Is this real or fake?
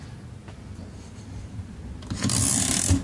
real